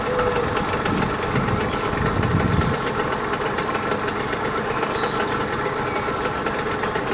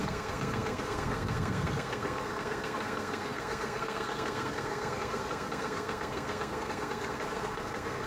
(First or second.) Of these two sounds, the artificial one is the second